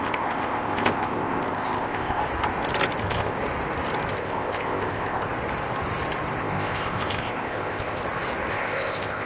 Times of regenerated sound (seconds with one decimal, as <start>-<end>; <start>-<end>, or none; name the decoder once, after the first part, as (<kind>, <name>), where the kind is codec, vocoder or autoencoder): 0.0-2.2 (codec, ZipCodec); 3.0-3.4; 4.1-5.3; 6.4-8.0; 8.5-9.3